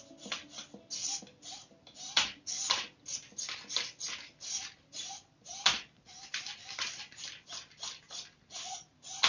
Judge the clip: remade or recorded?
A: recorded